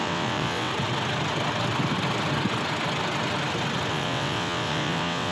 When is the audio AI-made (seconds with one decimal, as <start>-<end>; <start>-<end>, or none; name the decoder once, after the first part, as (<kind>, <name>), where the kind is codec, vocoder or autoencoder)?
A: 0.0-0.7 (vocoder, WaveNeXt); 3.9-5.3